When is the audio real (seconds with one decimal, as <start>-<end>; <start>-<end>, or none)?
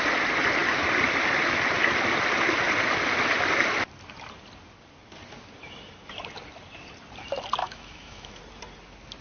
0.0-7.6; 8.4-9.2